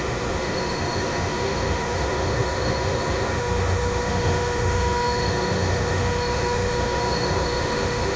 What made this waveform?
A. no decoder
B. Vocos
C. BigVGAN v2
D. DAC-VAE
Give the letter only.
D